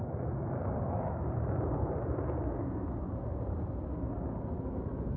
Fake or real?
real